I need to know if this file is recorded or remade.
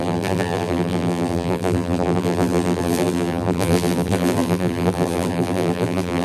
remade